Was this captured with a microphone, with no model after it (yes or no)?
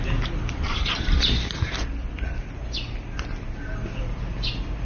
yes